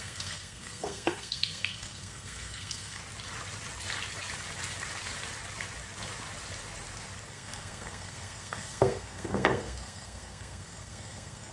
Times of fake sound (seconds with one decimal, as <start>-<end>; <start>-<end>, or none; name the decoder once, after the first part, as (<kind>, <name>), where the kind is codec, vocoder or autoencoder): 0.0-3.0 (codec, SNAC); 7.3-11.5